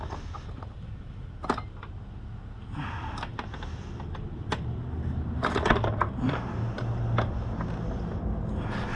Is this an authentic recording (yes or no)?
yes